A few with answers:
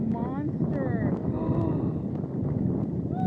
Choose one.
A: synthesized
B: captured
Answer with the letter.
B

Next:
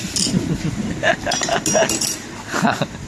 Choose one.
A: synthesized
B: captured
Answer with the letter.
B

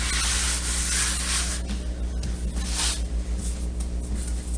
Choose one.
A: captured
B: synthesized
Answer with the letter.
A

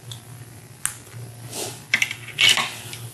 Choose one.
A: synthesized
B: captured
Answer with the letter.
B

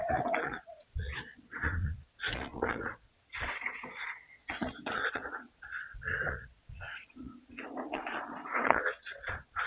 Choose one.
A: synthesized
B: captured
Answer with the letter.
A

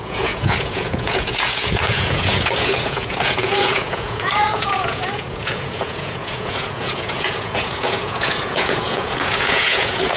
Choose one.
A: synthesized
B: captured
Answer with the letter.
A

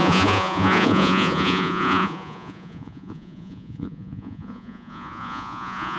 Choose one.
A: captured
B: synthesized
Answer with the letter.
B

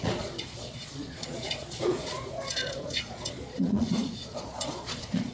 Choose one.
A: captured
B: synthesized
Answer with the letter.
B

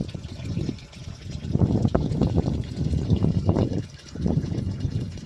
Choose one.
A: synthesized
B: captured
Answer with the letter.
A